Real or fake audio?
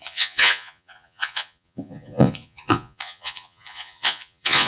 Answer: fake